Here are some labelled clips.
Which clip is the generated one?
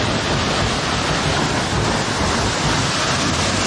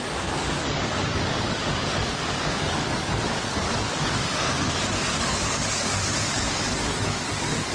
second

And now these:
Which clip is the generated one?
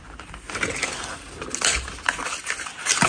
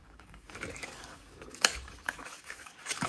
second